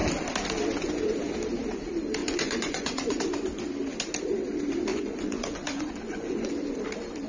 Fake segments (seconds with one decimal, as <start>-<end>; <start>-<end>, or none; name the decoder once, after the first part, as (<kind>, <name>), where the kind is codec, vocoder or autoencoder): 2.2-3.2 (vocoder, Vocos); 4.9-6.5